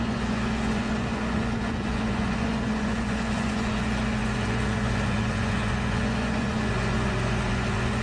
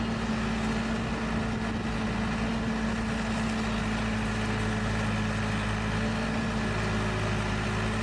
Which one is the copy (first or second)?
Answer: first